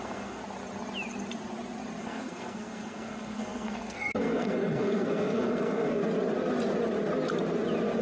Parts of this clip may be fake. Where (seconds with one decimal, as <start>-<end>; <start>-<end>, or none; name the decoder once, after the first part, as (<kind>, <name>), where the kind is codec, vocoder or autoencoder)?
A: 0.0-0.4 (codec, SNAC); 2.0-6.0